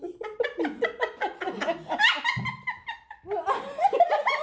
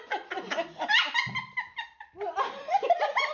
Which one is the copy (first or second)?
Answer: second